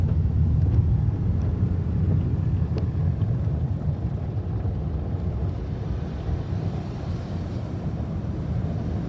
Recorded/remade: recorded